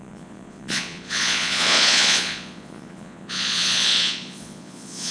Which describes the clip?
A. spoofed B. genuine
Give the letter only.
A